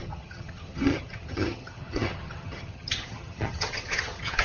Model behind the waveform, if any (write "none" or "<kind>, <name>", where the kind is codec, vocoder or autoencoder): vocoder, HiFi-GAN